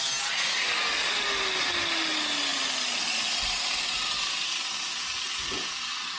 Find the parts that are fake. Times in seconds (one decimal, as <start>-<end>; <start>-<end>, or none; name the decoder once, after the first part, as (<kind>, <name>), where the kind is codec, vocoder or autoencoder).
none